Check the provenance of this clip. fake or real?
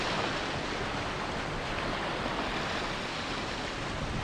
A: real